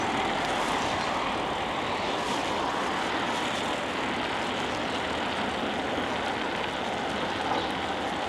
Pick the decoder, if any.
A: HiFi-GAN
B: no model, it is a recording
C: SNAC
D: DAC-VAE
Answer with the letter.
B